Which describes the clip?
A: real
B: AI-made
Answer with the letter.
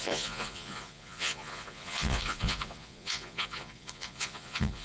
B